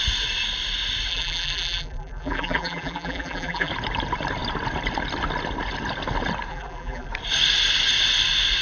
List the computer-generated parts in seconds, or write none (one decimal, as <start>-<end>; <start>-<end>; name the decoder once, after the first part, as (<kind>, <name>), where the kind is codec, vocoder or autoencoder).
1.1-3.7 (vocoder, BigVGAN v2); 6.5-7.1